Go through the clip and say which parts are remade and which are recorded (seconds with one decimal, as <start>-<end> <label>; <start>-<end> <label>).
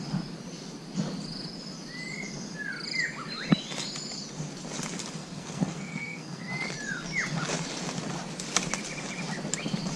0.0-5.2 recorded; 5.2-6.5 remade; 6.5-10.0 recorded